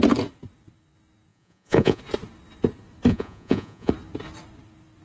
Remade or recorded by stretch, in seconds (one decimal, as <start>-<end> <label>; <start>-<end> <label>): 0.0-1.3 recorded; 1.3-2.0 remade; 2.0-3.1 recorded; 3.1-3.9 remade; 3.9-5.0 recorded